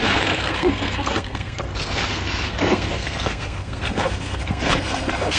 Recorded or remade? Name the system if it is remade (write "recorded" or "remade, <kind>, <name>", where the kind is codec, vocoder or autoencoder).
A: remade, codec, SNAC